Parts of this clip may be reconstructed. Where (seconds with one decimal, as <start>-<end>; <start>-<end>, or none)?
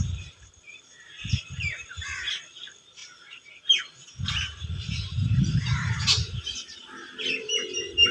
0.0-8.1